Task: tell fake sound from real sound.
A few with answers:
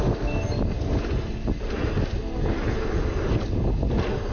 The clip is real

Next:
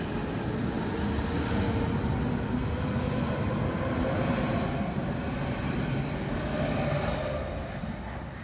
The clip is real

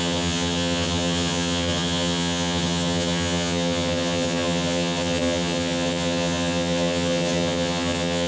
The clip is fake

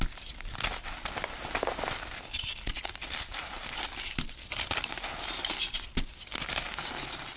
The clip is real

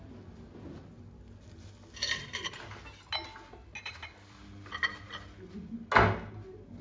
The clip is real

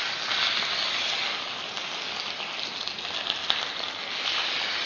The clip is real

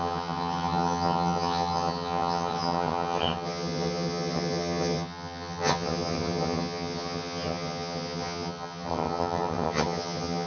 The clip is fake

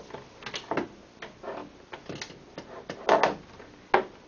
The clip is real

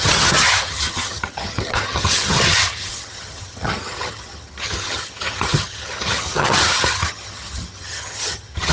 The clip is fake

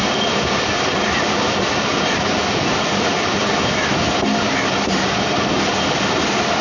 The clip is real